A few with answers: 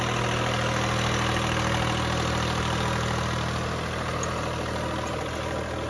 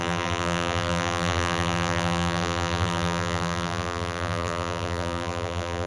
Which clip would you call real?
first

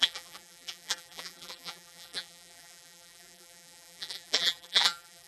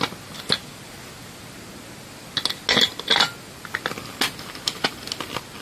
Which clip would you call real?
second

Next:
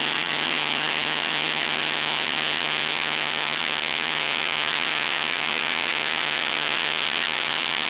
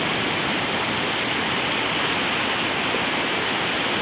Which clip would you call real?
second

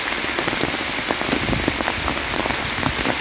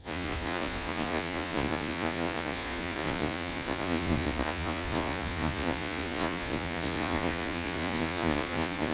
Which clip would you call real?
first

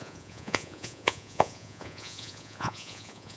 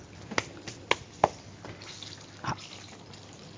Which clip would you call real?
second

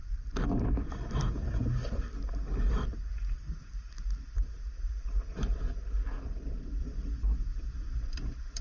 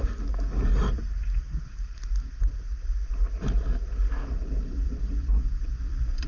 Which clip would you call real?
second